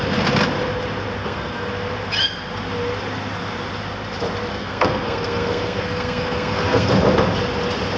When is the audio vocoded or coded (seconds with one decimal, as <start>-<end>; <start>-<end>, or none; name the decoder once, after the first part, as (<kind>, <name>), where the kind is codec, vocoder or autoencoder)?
1.2-1.7 (codec, SNAC); 4.5-6.9